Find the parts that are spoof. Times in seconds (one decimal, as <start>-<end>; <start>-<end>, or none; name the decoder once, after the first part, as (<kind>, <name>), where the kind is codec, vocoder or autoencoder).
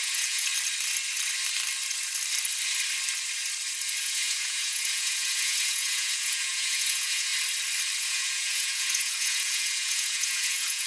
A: 0.0-0.5 (vocoder, Vocos); 4.0-7.3; 8.0-10.9